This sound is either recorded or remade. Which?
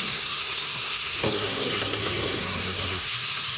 remade